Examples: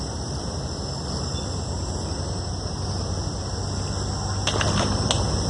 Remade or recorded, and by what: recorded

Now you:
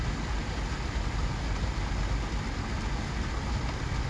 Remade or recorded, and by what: recorded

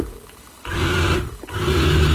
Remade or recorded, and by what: recorded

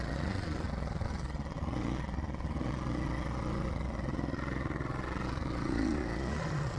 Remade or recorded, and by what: remade, vocoder, Vocos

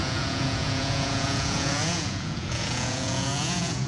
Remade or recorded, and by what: remade, vocoder, Vocos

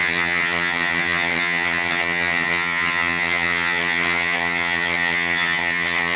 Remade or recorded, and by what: remade, vocoder, HiFi-GAN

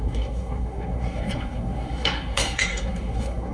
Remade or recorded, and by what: remade, codec, SNAC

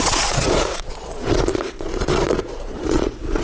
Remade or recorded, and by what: remade, vocoder, Vocos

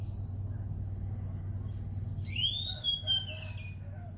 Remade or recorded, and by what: recorded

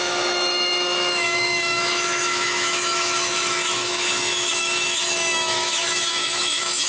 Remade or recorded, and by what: remade, autoencoder, DAC-VAE